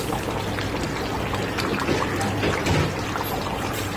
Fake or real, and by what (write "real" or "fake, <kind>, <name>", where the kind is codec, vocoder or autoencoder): real